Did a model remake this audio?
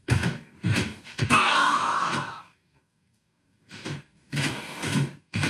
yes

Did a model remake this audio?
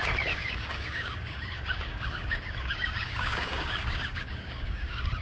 yes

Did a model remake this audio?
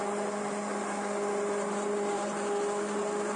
no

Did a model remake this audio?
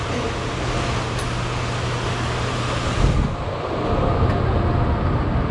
no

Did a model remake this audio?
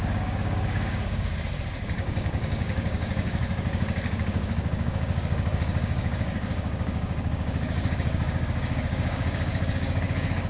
yes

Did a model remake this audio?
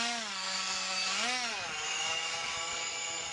yes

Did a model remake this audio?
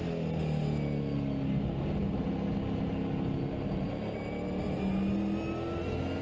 no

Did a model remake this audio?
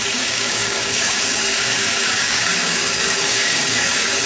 yes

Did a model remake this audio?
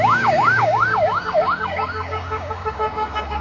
yes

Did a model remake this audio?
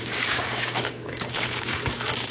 yes